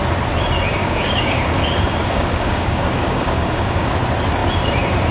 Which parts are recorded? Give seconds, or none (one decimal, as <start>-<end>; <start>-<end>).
0.0-0.8; 3.9-5.1